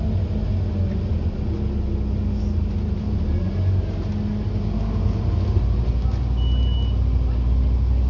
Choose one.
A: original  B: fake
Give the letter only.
A